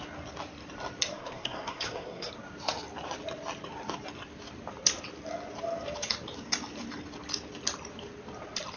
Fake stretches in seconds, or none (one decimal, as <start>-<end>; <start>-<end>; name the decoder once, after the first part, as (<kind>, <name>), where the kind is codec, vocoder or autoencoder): 1.1-2.3 (codec, SNAC)

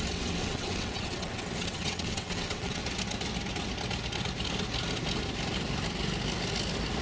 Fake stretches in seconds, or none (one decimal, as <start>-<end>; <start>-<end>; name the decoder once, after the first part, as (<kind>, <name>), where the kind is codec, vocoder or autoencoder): 0.0-2.8 (vocoder, WaveNeXt)

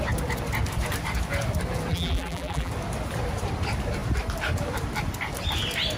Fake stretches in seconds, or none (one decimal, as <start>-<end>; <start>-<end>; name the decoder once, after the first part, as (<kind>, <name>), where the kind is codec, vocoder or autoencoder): 1.9-2.7 (vocoder, BigVGAN v2)

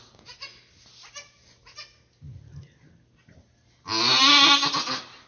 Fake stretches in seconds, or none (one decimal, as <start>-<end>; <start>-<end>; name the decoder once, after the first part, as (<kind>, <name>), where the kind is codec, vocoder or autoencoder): none

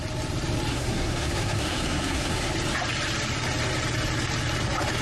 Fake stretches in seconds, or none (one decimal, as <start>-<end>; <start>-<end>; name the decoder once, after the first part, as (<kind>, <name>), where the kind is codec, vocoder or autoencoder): 0.7-2.5 (codec, SNAC)

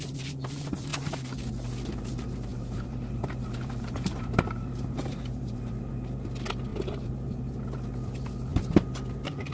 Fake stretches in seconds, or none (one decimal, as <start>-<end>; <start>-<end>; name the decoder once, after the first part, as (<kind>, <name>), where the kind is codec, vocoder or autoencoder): 2.5-5.9 (vocoder, BigVGAN v2); 6.7-7.6